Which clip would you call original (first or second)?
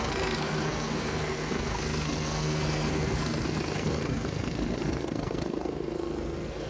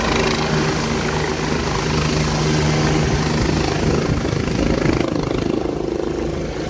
second